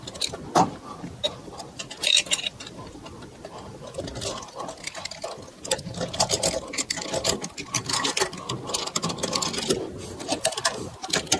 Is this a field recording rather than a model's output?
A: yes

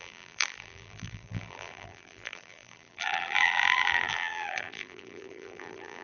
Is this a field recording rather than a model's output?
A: no